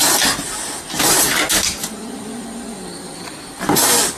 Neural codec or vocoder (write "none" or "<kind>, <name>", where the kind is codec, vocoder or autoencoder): none